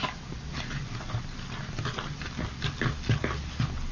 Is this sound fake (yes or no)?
no